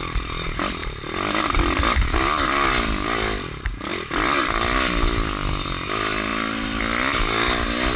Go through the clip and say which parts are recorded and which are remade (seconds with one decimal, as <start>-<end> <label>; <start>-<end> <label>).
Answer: 0.0-8.0 recorded